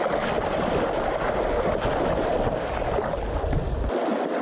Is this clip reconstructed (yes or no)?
no